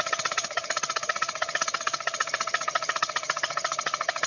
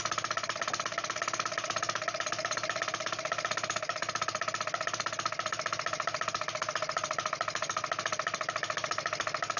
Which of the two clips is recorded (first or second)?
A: second